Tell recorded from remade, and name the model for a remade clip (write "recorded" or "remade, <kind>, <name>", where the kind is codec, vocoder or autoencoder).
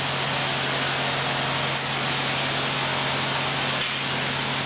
recorded